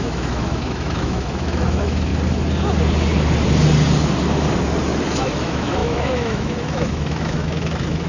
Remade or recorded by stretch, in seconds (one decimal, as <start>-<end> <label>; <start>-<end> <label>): 0.0-2.1 remade; 2.1-5.1 recorded; 5.1-8.1 remade

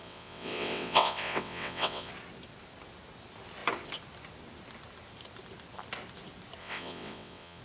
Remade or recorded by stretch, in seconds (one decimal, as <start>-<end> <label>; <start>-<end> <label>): 0.0-2.1 remade; 2.1-6.6 recorded; 6.6-7.6 remade

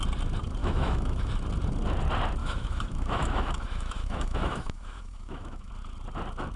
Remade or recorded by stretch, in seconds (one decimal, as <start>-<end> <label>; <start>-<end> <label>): 0.0-0.6 recorded; 0.6-1.3 remade; 1.3-2.4 recorded; 2.4-5.7 remade; 5.7-6.6 recorded

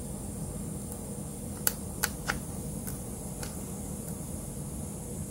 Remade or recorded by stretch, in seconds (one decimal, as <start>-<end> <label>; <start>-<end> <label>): 0.0-1.3 recorded; 1.3-4.5 remade; 4.5-5.3 recorded

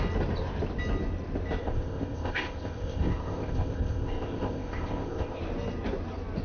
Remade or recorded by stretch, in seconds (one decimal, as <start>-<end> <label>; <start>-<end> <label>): 0.0-1.6 recorded; 1.6-5.4 remade; 5.4-6.4 recorded